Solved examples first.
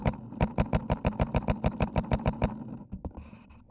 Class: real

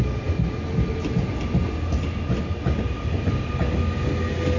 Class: real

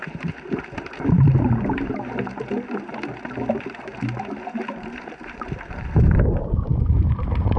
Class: fake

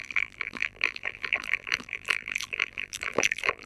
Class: fake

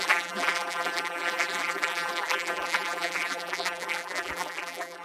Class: fake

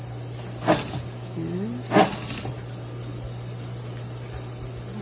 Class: real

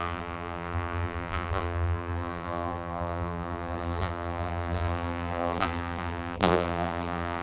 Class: fake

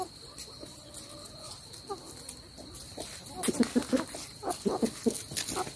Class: real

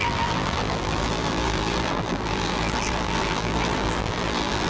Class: fake